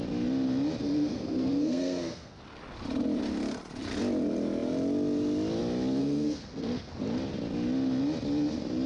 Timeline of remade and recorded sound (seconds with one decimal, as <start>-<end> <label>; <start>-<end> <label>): 0.0-0.8 recorded; 0.8-2.4 remade; 2.4-6.0 recorded; 6.0-6.9 remade; 6.9-8.9 recorded